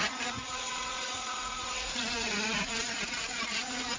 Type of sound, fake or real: fake